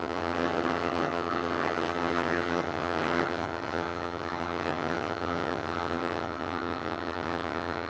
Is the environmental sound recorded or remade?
remade